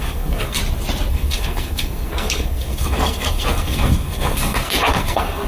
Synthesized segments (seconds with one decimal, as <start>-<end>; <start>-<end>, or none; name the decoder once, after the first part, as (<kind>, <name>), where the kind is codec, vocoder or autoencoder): 0.0-0.6 (codec, SNAC); 1.1-5.5